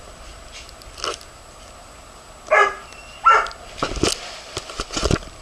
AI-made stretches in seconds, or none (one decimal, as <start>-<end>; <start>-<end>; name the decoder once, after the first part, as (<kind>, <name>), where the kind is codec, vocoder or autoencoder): none

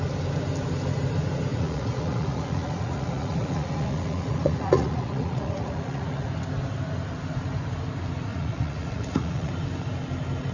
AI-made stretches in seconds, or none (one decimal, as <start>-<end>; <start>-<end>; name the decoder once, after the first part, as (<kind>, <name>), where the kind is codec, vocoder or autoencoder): 1.5-6.3 (vocoder, Vocos); 8.3-9.5

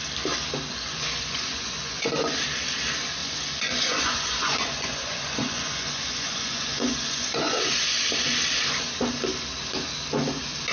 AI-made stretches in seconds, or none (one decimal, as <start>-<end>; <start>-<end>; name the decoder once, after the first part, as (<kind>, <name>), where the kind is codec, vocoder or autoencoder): 0.7-2.1 (vocoder, Vocos); 3.2-7.6

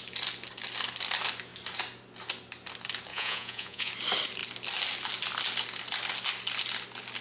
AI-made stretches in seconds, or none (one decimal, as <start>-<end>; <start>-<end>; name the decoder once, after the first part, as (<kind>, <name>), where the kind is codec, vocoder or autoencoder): 3.1-3.9 (vocoder, Vocos)

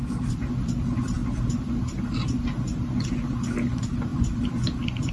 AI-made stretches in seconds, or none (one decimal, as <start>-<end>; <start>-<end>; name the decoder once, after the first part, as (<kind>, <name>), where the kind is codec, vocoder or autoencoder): none